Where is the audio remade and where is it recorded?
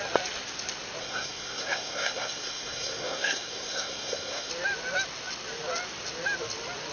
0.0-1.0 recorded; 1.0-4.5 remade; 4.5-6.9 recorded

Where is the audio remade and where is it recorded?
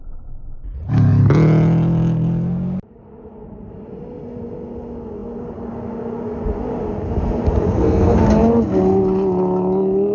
0.0-7.7 recorded; 7.7-8.2 remade; 8.2-10.1 recorded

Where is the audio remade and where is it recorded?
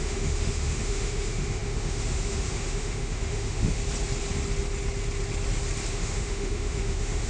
0.0-3.8 remade; 3.8-5.9 recorded; 5.9-7.3 remade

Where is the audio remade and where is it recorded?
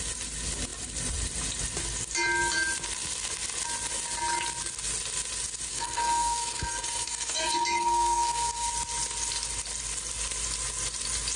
0.0-5.7 recorded; 5.7-8.7 remade; 8.7-11.4 recorded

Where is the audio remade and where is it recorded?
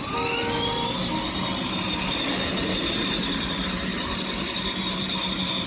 0.0-5.7 recorded